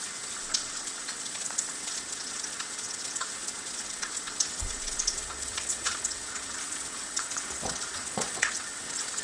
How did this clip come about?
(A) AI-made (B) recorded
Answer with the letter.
A